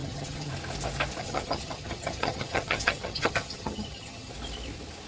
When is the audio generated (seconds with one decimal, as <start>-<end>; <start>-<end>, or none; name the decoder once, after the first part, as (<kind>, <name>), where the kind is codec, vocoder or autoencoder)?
0.0-0.5 (vocoder, HiFi-GAN); 1.2-4.3